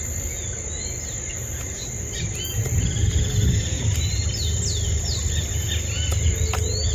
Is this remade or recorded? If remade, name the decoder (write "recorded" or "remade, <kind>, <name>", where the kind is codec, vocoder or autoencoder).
recorded